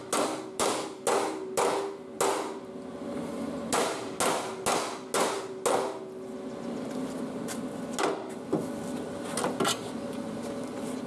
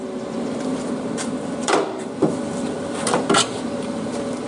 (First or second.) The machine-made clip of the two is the second